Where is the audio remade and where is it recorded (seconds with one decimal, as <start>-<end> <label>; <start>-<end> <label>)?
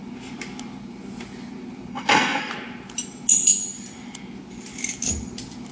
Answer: 0.0-1.9 recorded; 1.9-2.5 remade; 2.5-5.7 recorded